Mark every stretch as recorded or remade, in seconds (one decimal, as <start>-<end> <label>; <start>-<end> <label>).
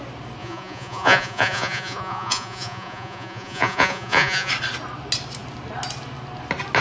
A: 0.0-0.4 recorded; 0.4-4.5 remade; 4.5-6.8 recorded